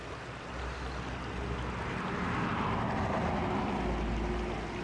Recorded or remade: recorded